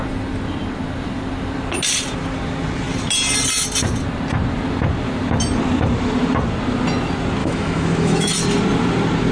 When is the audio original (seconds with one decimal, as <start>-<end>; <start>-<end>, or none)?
0.0-7.4; 8.3-9.3